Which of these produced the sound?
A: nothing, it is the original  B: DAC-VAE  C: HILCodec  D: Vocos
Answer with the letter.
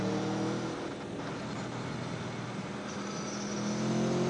A